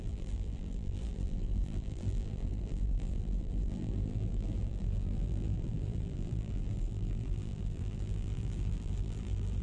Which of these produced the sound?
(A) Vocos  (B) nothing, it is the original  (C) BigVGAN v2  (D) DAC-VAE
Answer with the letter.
C